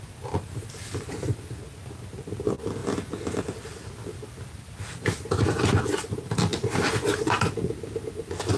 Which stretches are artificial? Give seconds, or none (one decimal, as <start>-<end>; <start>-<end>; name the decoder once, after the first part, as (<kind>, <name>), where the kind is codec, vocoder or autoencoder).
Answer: none

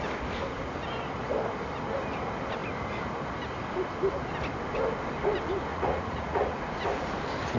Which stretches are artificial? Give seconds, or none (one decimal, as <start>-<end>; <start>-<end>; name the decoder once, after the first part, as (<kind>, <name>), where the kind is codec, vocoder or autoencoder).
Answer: 5.7-6.9 (vocoder, Vocos)